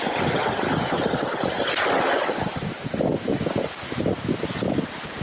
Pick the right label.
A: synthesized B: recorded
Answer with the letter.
B